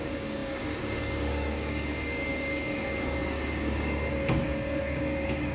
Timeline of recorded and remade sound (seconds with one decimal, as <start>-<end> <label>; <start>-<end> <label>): 0.0-5.5 remade